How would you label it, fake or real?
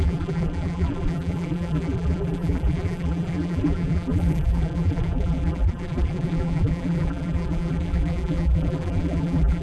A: fake